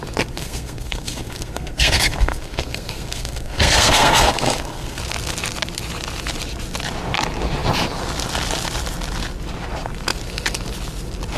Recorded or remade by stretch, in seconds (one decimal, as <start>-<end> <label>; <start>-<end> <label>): 0.0-0.4 recorded; 0.4-5.0 remade; 5.0-11.4 recorded

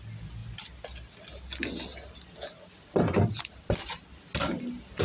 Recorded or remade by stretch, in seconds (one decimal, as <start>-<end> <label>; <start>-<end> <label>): 0.0-5.0 recorded

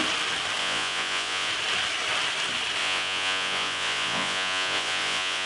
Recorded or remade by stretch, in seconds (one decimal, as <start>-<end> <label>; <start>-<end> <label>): 0.0-0.6 recorded; 0.6-1.5 remade; 1.5-2.8 recorded; 2.8-5.5 remade

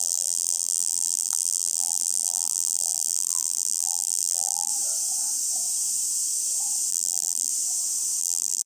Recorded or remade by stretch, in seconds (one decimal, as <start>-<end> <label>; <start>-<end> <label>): 0.0-4.7 remade; 4.7-6.9 recorded; 6.9-7.5 remade; 7.5-8.2 recorded; 8.2-8.7 remade

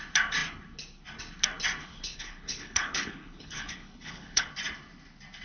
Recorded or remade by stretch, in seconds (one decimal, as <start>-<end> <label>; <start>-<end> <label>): 0.0-1.8 recorded; 1.8-4.5 remade; 4.5-5.4 recorded

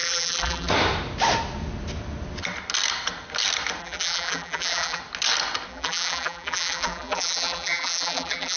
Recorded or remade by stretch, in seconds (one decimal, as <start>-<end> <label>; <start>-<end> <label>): 0.0-0.7 remade; 0.7-3.8 recorded; 3.8-5.0 remade; 5.0-5.7 recorded; 5.7-8.6 remade

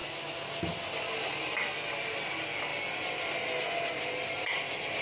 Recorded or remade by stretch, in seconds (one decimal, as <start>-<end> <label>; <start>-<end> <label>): 0.0-1.9 recorded; 1.9-2.7 remade; 2.7-5.0 recorded

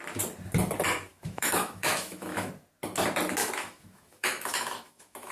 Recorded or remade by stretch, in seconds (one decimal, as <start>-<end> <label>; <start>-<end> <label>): 0.0-1.1 recorded; 1.1-2.5 remade; 2.5-3.4 recorded; 3.4-5.3 remade